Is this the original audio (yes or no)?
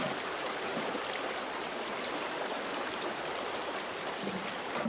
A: no